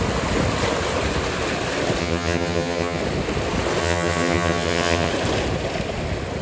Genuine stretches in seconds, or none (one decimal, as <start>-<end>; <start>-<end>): 0.0-2.0; 3.0-3.8; 5.1-6.4